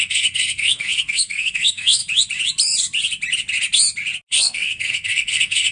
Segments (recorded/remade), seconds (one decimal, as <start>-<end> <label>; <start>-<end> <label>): 0.0-2.0 remade; 2.0-4.3 recorded; 4.3-5.7 remade

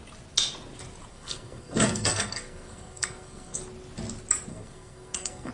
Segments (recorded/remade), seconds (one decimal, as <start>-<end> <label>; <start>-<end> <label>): 0.0-1.1 recorded; 1.1-3.6 remade; 3.6-4.5 recorded; 4.5-5.5 remade

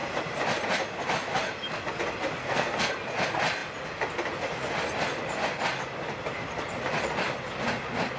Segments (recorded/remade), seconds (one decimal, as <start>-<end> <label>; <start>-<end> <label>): 0.0-2.4 recorded; 2.4-2.9 remade; 2.9-8.2 recorded

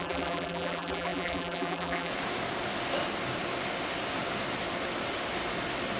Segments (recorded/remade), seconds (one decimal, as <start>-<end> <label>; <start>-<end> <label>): 0.0-2.1 remade; 2.1-6.0 recorded

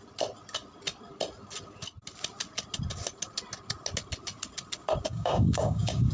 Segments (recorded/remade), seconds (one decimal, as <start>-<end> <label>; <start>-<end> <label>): 0.0-5.1 recorded; 5.1-6.1 remade

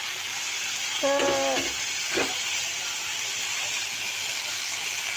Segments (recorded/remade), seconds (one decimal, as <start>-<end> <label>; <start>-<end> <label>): 0.0-5.2 recorded

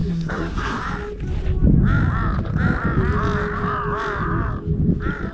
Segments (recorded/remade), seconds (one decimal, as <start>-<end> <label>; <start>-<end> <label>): 0.0-0.8 remade; 0.8-5.3 recorded